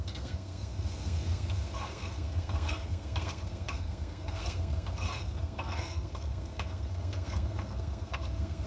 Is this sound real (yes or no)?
no